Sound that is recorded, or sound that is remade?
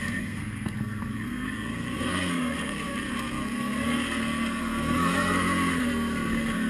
remade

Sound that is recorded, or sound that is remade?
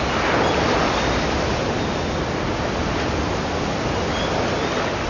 recorded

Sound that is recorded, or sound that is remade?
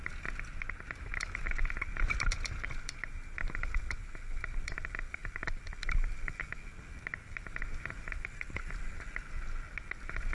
recorded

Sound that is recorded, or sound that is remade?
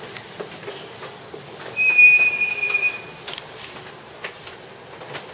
recorded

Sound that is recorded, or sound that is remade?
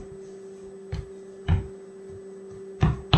recorded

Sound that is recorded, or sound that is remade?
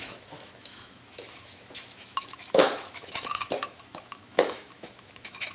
remade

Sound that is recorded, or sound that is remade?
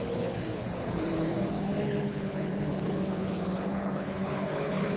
remade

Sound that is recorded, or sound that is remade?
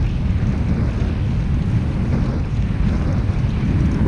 recorded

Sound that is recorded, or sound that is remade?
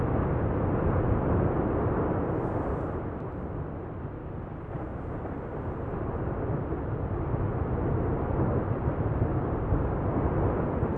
recorded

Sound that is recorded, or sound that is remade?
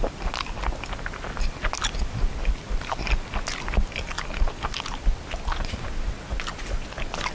recorded